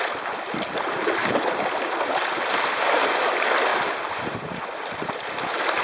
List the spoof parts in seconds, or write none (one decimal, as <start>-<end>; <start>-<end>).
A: 1.2-2.0; 3.7-5.1

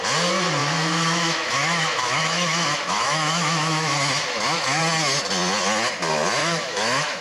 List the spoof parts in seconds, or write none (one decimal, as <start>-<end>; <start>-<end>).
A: 0.6-4.8; 6.4-7.2

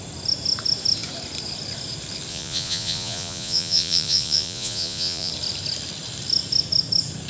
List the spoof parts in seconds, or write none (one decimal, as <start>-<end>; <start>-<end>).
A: 2.3-5.3

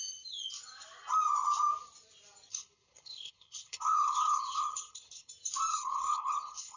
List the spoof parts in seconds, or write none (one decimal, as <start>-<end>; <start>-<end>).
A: 2.5-5.3; 5.7-6.8

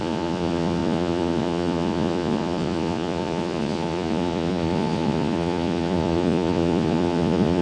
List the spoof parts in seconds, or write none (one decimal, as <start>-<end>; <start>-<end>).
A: 0.0-7.6

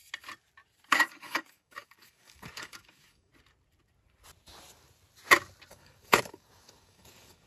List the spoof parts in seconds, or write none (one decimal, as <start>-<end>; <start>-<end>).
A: 0.9-3.3; 5.7-7.5

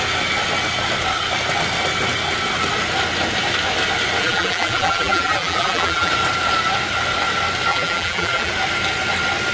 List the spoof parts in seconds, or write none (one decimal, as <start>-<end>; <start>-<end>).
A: 4.2-6.1; 7.7-8.5